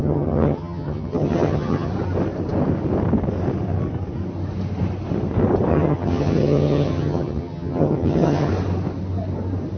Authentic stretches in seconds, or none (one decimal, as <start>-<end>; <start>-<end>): 1.9-5.7; 8.5-9.8